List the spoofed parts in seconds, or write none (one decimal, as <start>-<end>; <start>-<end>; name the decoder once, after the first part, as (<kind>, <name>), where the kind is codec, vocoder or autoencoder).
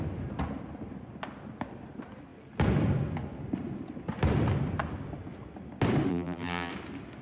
6.1-6.7 (vocoder, BigVGAN v2)